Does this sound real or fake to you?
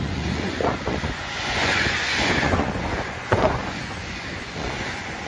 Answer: fake